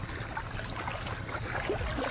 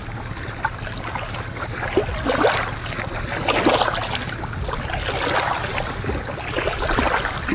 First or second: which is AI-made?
first